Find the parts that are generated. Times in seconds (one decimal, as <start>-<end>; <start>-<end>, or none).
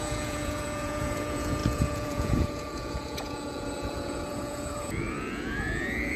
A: 0.0-6.2